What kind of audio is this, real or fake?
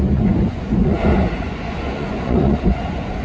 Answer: fake